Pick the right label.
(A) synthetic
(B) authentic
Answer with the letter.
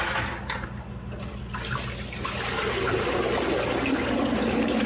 B